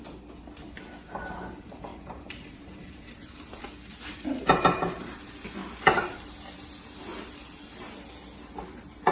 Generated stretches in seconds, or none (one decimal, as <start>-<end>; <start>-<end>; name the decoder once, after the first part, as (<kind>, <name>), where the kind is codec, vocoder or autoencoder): 1.9-3.6 (vocoder, BigVGAN v2); 5.6-6.3